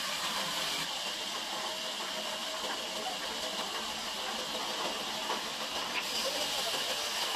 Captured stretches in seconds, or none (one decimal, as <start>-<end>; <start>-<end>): 0.0-7.4